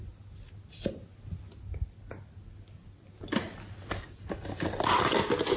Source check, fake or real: real